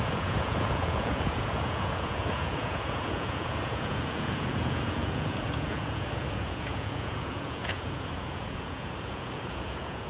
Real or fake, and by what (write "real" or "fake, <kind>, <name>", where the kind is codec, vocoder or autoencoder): fake, vocoder, Vocos